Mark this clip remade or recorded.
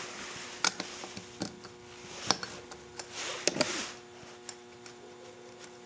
recorded